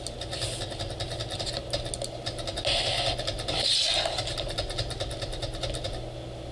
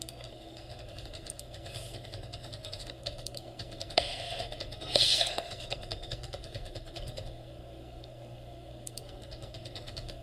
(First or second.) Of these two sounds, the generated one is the second